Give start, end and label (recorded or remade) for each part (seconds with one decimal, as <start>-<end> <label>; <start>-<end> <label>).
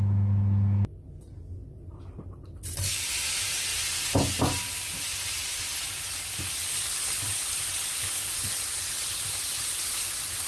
0.0-3.7 recorded; 3.7-4.4 remade; 4.4-10.5 recorded